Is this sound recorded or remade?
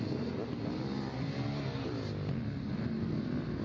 recorded